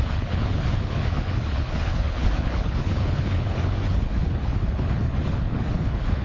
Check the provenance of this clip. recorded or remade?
remade